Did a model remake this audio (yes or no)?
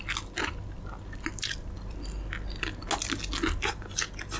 no